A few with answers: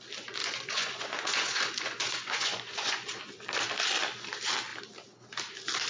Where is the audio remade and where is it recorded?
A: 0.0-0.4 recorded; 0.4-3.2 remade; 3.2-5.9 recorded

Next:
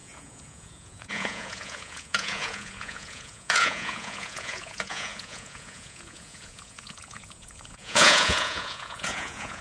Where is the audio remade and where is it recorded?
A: 0.0-9.6 remade

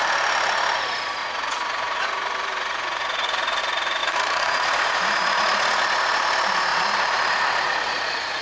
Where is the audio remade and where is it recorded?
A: 0.0-1.2 recorded; 1.2-3.6 remade; 3.6-4.0 recorded; 4.0-6.2 remade; 6.2-6.7 recorded; 6.7-8.4 remade

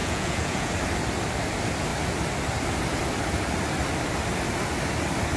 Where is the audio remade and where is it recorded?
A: 0.0-0.7 remade; 0.7-5.4 recorded

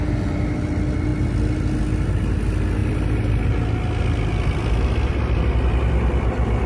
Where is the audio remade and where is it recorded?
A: 0.0-6.7 recorded

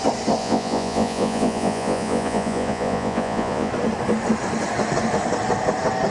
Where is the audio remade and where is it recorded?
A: 0.0-0.4 recorded; 0.4-3.7 remade; 3.7-6.1 recorded

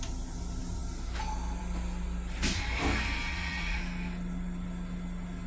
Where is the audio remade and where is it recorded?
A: 0.0-3.3 recorded; 3.3-3.8 remade; 3.8-5.5 recorded